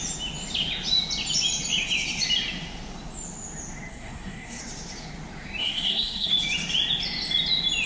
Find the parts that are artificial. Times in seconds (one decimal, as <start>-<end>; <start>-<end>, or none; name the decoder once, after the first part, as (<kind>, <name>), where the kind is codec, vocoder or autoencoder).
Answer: 3.9-4.6 (codec, SNAC); 5.6-6.3